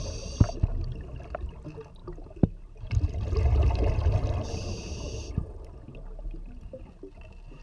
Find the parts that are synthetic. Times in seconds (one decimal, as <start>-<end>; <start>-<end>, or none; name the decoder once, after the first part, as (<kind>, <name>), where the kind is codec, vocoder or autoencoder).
none